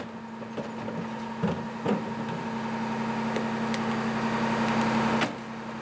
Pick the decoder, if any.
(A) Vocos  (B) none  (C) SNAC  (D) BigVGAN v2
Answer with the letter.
B